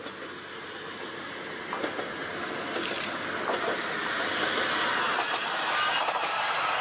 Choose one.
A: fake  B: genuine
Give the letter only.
B